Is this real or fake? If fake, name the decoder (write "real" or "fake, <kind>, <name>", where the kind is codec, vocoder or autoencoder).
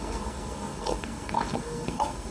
fake, codec, SNAC